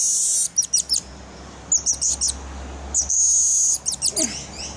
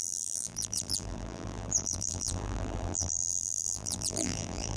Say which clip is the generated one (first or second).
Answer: second